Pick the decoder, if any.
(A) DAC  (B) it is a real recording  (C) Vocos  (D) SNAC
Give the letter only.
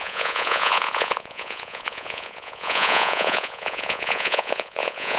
C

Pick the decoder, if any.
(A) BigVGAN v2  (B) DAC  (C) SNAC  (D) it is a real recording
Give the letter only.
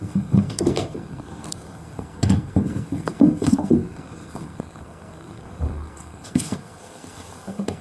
C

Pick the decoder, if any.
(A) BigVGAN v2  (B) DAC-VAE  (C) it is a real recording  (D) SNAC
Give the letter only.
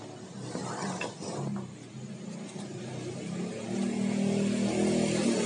C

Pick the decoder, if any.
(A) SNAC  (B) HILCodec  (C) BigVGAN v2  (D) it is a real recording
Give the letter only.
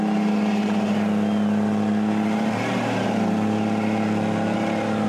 D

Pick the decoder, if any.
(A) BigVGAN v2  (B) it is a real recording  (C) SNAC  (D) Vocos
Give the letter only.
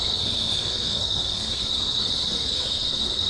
C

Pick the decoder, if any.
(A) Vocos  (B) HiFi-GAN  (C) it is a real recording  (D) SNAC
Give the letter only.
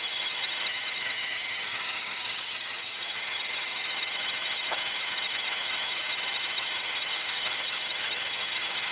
B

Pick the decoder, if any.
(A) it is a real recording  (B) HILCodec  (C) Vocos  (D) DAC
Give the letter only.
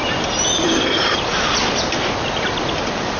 A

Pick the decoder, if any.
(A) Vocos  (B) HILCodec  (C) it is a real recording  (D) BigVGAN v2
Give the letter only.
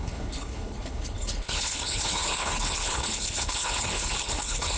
B